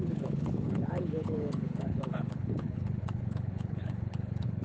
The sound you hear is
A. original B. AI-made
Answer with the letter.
B